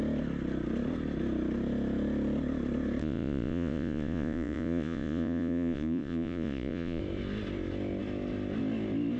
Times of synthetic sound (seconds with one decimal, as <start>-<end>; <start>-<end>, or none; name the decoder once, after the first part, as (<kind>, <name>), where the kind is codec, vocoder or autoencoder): 3.0-7.0 (vocoder, Vocos)